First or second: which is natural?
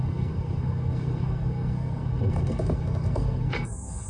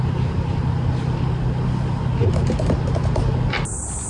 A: second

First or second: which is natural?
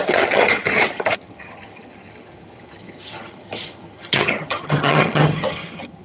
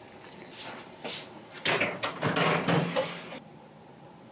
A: second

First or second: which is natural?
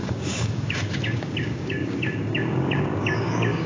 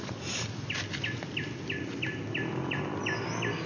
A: second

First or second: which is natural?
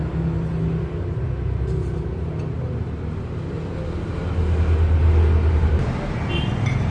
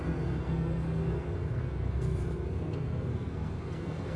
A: first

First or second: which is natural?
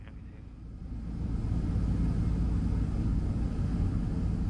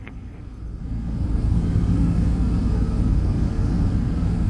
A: first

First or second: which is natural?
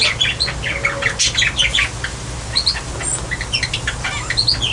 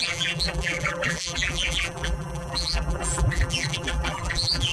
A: first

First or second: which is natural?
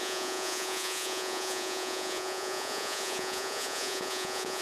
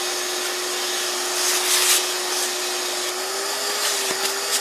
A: second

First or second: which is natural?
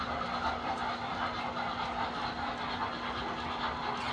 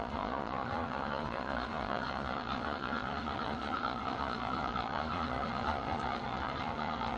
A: first